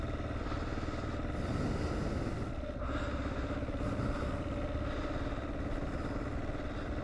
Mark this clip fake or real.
real